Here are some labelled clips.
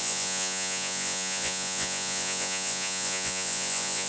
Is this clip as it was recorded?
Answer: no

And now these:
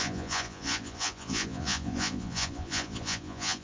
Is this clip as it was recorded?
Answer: no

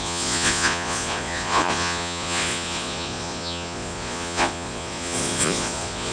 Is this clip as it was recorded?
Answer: no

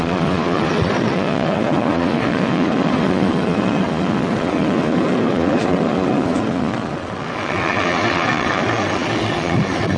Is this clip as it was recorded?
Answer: no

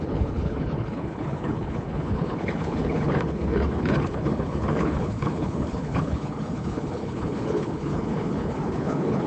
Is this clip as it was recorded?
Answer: no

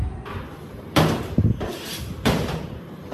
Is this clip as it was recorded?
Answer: yes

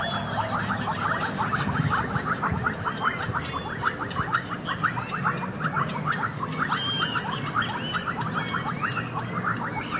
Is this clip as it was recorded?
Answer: yes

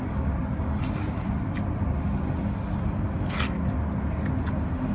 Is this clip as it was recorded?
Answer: yes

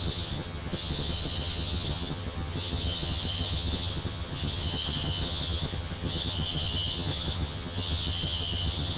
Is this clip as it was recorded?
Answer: no